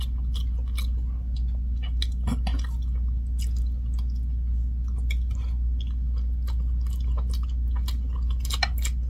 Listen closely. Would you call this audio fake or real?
real